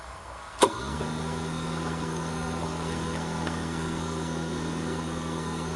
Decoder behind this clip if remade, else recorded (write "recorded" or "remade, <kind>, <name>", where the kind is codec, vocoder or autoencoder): remade, codec, SNAC